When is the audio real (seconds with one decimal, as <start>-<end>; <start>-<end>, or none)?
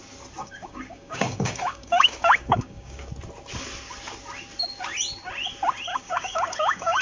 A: 0.0-0.4; 3.1-5.9